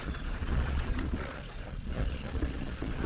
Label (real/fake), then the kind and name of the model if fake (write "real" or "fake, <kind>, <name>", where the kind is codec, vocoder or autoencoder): fake, vocoder, Vocos